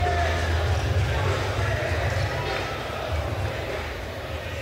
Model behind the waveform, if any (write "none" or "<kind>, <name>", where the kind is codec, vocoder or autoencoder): none